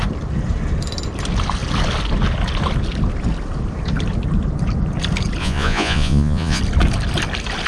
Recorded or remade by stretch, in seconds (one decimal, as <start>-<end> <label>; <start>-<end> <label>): 0.0-5.4 recorded; 5.4-6.6 remade; 6.6-7.7 recorded